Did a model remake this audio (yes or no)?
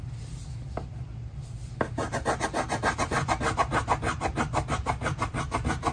no